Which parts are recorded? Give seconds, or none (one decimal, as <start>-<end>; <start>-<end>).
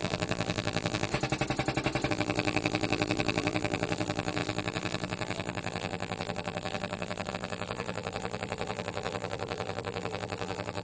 1.1-2.1